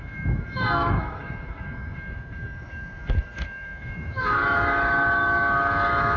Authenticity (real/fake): fake